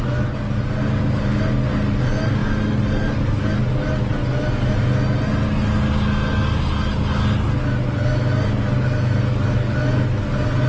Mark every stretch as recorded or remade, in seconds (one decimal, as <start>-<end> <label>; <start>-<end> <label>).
0.0-10.7 recorded